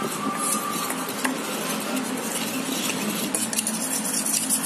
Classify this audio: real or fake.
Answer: real